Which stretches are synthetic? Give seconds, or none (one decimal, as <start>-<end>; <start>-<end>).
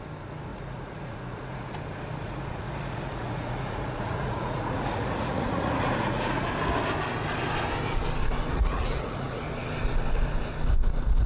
0.5-1.7; 2.2-6.5; 8.5-9.4